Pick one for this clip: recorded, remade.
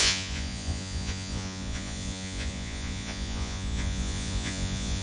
remade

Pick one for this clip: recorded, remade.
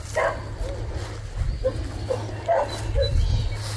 recorded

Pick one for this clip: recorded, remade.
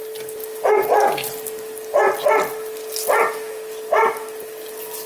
recorded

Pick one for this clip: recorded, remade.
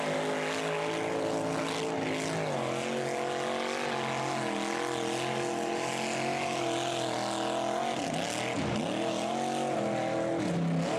recorded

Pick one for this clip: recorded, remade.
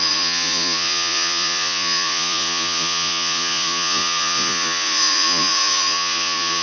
remade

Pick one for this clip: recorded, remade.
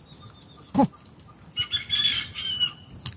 recorded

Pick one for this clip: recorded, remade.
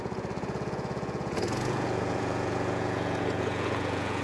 remade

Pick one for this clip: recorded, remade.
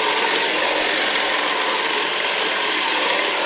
recorded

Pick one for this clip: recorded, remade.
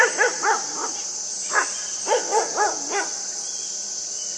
recorded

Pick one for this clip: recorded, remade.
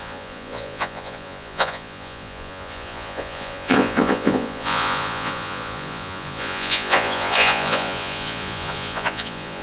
remade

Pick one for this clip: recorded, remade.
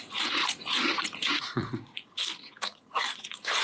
remade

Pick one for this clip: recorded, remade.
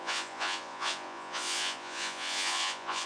remade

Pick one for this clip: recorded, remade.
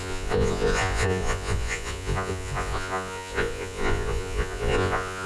remade